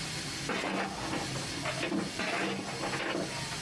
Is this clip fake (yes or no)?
no